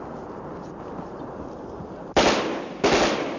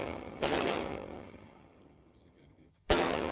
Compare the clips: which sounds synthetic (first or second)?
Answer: second